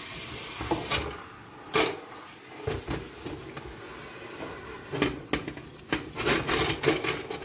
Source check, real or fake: real